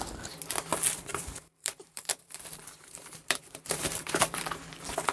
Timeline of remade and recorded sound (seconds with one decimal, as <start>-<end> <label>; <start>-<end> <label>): 0.0-1.1 recorded; 1.1-4.2 remade; 4.2-5.1 recorded